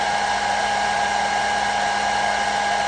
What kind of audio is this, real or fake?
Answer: real